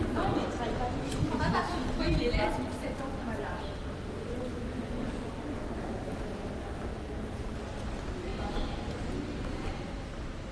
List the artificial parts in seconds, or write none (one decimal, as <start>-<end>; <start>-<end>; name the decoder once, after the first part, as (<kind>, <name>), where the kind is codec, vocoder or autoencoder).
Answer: none